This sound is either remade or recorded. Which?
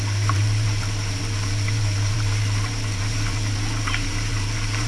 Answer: remade